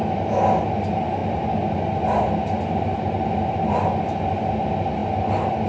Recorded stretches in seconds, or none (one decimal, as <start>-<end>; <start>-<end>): 0.0-5.7